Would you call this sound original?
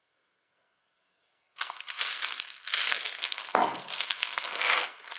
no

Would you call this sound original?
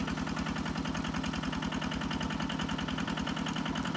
yes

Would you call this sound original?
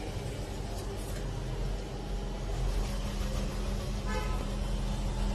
yes